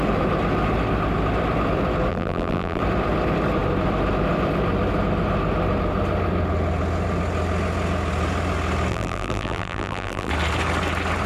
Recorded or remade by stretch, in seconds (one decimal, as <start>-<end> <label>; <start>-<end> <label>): 0.0-2.1 recorded; 2.1-2.8 remade; 2.8-8.9 recorded; 8.9-10.3 remade; 10.3-11.3 recorded